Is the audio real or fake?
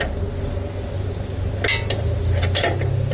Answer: real